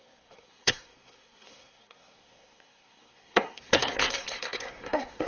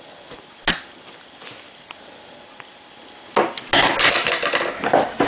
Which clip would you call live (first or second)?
second